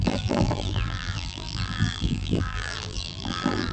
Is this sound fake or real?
fake